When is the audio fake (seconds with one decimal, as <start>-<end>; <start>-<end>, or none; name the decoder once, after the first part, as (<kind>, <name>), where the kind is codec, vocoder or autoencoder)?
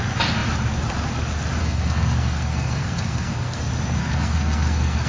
1.6-3.6 (codec, SNAC); 4.0-5.1